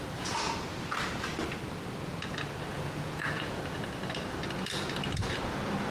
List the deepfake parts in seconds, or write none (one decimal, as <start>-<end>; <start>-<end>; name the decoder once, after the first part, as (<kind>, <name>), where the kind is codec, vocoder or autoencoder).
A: 2.7-3.8 (vocoder, Vocos)